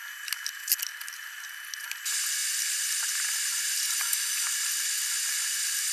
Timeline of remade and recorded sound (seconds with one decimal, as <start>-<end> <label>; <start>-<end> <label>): 0.0-0.9 recorded; 0.9-1.5 remade; 1.5-2.4 recorded; 2.4-4.4 remade; 4.4-5.9 recorded